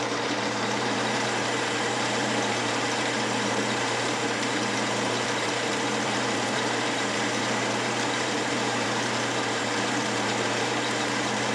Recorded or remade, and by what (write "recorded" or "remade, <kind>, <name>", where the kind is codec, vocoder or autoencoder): remade, vocoder, BigVGAN v2